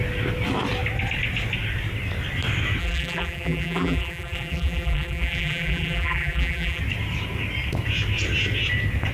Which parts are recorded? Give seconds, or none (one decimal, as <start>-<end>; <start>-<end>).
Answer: 0.0-2.8; 6.8-9.1